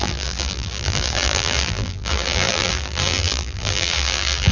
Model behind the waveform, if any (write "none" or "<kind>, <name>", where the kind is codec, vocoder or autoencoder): vocoder, BigVGAN v2